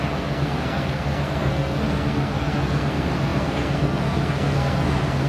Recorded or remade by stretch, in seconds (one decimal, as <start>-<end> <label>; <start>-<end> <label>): 0.0-5.3 remade